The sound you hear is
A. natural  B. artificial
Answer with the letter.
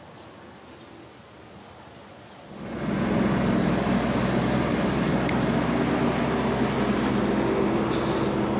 A